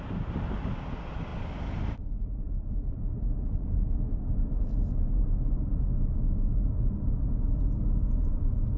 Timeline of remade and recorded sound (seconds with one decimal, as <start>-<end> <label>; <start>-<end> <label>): 0.0-8.8 recorded